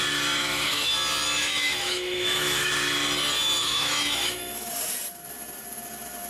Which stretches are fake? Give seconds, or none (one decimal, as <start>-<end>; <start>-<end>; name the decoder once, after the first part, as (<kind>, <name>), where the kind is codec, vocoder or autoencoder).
0.4-0.9 (autoencoder, DAC-VAE); 1.4-2.7; 3.6-4.7